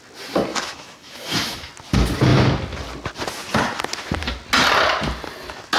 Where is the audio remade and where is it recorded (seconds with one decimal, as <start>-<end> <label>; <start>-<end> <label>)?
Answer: 0.0-0.5 recorded; 0.5-1.7 remade; 1.7-5.8 recorded